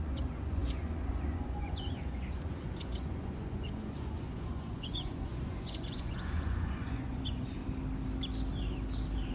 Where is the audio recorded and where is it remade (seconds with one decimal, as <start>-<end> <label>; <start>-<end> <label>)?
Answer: 0.0-7.6 remade; 7.6-9.3 recorded